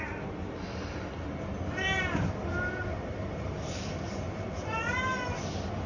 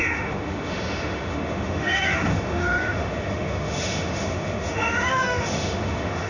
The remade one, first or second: second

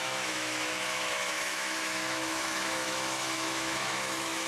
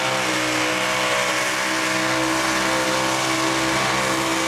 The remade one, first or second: first